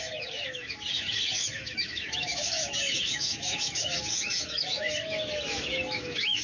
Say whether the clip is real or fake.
fake